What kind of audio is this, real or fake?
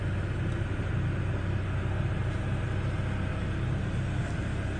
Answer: real